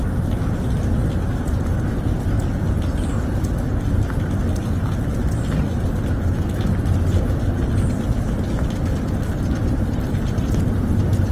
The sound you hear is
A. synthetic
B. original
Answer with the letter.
B